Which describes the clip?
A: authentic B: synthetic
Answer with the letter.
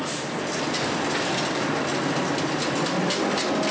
A